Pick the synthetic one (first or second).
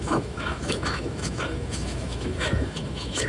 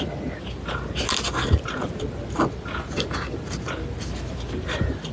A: first